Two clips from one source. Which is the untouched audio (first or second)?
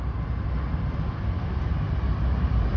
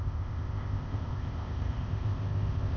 first